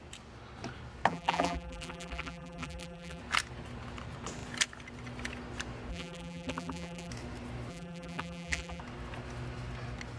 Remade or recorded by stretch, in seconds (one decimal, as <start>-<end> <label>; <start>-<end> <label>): 0.0-1.1 recorded; 1.1-3.2 remade; 3.2-5.9 recorded; 5.9-7.1 remade; 7.1-7.7 recorded; 7.7-8.8 remade; 8.8-10.2 recorded